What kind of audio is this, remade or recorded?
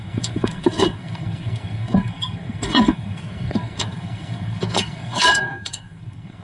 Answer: remade